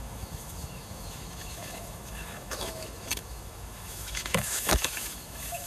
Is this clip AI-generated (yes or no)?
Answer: yes